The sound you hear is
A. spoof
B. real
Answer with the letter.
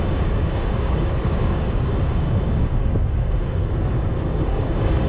A